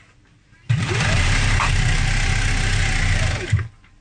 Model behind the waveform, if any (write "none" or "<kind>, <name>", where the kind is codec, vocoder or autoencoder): none